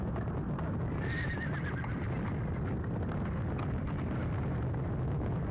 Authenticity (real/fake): real